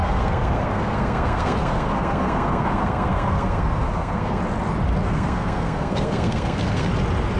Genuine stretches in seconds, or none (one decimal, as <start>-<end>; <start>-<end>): 4.4-5.0; 6.9-7.4